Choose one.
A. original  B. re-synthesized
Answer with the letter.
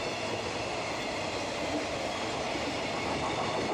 A